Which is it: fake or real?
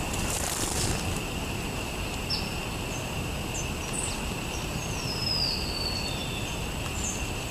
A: real